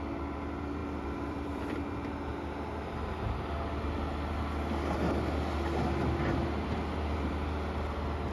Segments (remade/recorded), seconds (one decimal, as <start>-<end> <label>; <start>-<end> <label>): 0.0-0.8 recorded; 0.8-1.8 remade; 1.8-8.3 recorded